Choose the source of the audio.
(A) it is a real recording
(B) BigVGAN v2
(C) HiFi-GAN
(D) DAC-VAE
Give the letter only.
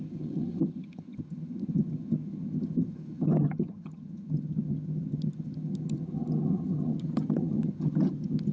C